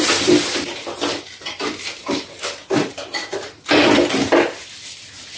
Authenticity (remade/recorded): remade